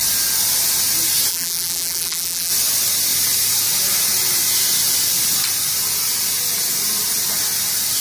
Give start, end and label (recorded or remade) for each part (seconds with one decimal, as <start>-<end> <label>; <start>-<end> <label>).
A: 0.0-1.3 recorded; 1.3-2.5 remade; 2.5-8.0 recorded